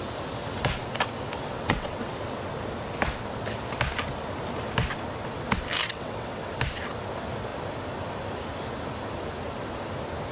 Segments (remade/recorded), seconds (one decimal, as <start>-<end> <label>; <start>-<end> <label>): 0.0-1.5 recorded; 1.5-2.2 remade; 2.2-5.8 recorded; 5.8-6.4 remade; 6.4-10.3 recorded